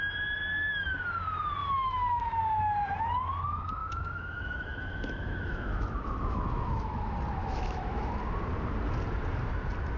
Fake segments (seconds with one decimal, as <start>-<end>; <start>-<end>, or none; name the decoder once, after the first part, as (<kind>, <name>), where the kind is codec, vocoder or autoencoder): 1.6-2.4 (autoencoder, DAC-VAE); 3.8-6.9; 7.4-8.1